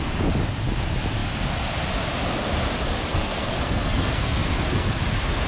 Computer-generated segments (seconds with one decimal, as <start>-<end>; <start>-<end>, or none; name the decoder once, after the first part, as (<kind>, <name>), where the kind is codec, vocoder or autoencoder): 3.1-5.0 (codec, SNAC)